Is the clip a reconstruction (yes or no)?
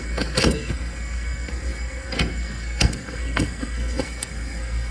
yes